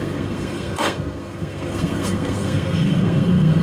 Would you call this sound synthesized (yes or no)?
yes